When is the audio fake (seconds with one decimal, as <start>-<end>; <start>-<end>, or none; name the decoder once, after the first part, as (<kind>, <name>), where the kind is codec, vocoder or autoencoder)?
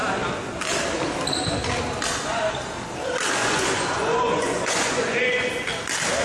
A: 3.4-5.5 (vocoder, Vocos)